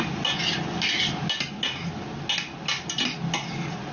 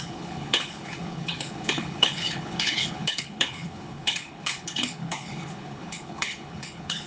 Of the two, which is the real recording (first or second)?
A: first